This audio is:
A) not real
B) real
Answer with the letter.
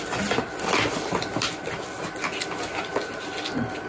B